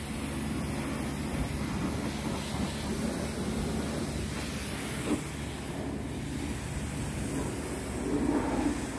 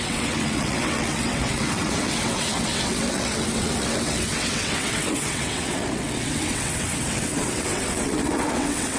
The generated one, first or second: second